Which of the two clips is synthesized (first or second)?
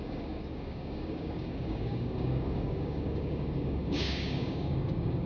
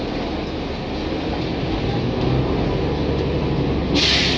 first